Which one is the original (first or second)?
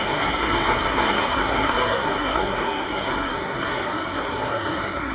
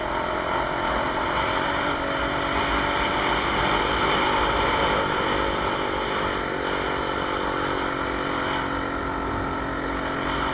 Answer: second